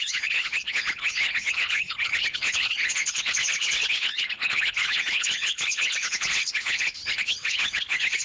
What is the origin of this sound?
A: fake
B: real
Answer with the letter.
A